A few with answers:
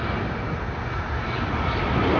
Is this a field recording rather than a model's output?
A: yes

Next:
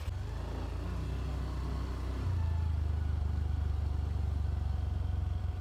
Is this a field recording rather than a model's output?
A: yes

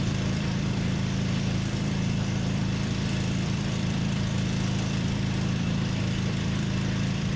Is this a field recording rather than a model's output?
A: no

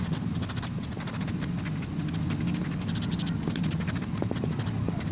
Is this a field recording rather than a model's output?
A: yes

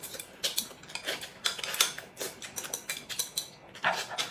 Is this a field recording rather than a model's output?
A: yes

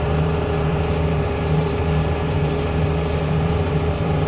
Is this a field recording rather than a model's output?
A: no